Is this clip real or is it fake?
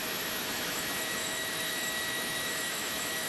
fake